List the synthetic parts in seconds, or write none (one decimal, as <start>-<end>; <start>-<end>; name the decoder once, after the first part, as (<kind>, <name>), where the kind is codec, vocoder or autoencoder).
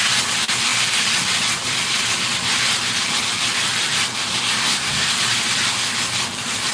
4.6-5.1 (codec, SNAC)